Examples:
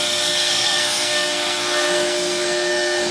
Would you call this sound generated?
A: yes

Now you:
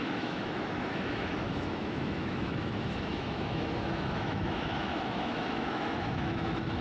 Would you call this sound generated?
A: yes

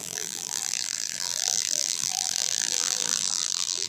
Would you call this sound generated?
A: yes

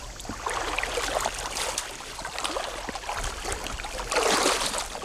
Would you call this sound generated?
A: no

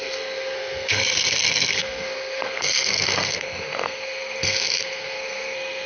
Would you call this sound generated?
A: yes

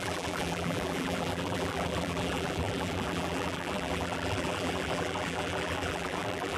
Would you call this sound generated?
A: yes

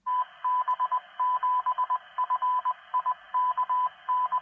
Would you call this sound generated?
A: no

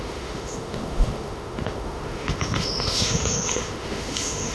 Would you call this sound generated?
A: yes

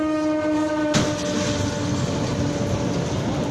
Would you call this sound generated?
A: no